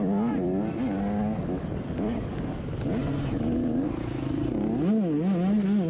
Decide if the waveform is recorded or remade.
recorded